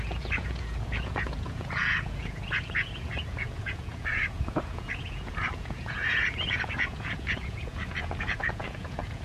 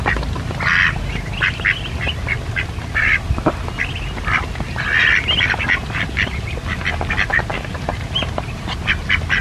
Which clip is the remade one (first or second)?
first